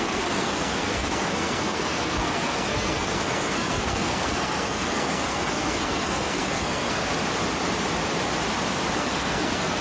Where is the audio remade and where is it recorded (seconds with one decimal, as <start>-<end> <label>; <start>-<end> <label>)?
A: 0.0-7.1 remade; 7.1-9.0 recorded; 9.0-9.8 remade